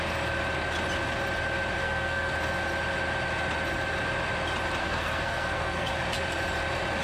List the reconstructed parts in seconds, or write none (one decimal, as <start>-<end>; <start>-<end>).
1.8-2.3; 4.8-5.9